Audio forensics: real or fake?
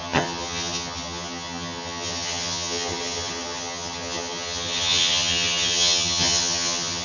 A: fake